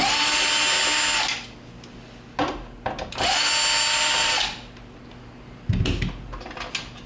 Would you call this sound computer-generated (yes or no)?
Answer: no